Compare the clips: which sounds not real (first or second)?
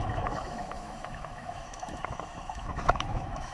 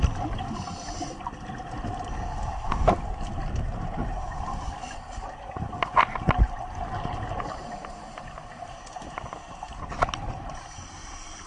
first